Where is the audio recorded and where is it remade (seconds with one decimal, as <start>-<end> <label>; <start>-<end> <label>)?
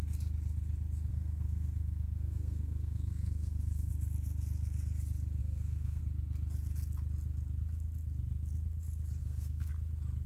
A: 0.0-1.1 recorded; 1.1-3.9 remade; 3.9-5.4 recorded; 5.4-6.0 remade; 6.0-9.2 recorded; 9.2-9.7 remade; 9.7-10.3 recorded